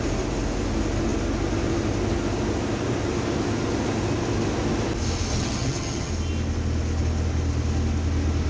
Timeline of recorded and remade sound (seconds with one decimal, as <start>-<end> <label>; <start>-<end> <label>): 0.0-5.3 recorded; 5.3-6.1 remade; 6.1-8.5 recorded